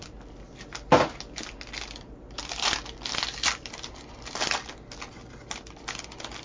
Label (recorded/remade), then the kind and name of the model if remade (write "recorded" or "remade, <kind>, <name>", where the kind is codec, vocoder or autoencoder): recorded